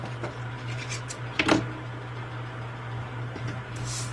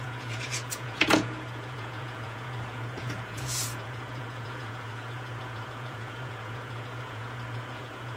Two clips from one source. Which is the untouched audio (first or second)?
first